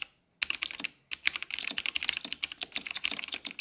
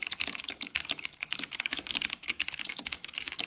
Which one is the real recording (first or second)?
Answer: first